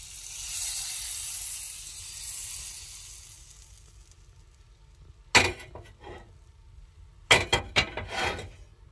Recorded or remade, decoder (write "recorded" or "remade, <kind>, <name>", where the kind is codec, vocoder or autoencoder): recorded